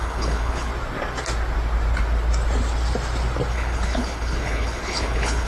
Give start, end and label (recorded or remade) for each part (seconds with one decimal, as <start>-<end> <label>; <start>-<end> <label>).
0.0-0.7 remade; 0.7-3.5 recorded; 3.5-5.5 remade